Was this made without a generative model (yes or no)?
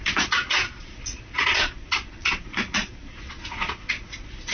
no